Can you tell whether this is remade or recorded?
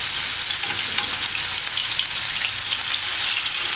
recorded